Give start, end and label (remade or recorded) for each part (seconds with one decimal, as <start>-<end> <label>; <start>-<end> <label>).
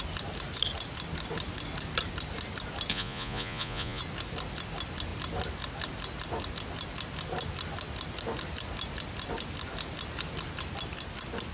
0.0-2.9 recorded; 2.9-4.0 remade; 4.0-11.5 recorded